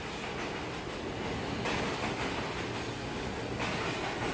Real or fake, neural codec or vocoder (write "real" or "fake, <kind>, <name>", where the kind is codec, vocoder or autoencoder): real